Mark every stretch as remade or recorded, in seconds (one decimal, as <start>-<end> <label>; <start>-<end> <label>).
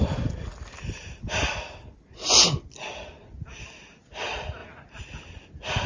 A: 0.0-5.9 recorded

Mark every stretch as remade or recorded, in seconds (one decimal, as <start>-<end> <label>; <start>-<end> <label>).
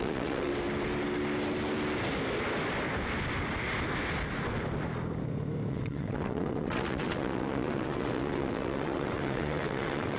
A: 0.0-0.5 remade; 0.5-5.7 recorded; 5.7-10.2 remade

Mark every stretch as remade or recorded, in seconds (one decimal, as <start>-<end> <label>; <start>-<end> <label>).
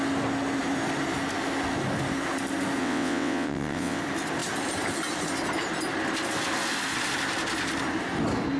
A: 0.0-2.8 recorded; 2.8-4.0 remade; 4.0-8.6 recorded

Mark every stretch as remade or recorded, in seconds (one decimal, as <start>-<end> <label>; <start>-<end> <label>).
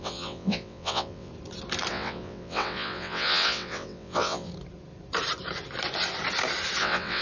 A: 0.0-1.3 remade; 1.3-1.9 recorded; 1.9-4.5 remade; 4.5-6.8 recorded; 6.8-7.2 remade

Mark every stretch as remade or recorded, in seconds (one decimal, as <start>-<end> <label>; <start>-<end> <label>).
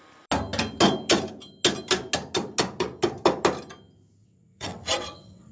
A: 0.0-4.2 recorded; 4.2-5.5 remade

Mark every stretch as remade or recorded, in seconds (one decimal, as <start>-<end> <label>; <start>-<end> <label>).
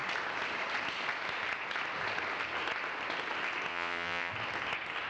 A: 0.0-3.7 recorded; 3.7-4.3 remade; 4.3-5.1 recorded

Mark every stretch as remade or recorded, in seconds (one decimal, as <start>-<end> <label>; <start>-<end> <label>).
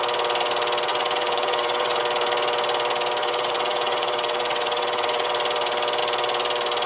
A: 0.0-0.9 recorded; 0.9-2.0 remade; 2.0-3.2 recorded; 3.2-5.3 remade; 5.3-6.9 recorded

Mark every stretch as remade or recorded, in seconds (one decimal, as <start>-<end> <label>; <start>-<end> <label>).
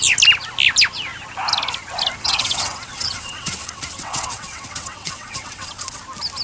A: 0.0-2.2 recorded; 2.2-6.0 remade; 6.0-6.4 recorded